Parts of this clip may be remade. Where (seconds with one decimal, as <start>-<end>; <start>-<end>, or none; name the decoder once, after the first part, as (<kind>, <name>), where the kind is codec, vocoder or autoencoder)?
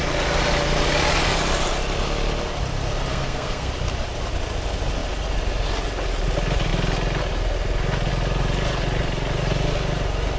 3.1-3.7 (codec, SNAC)